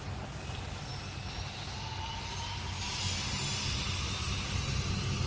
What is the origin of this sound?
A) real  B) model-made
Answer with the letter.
A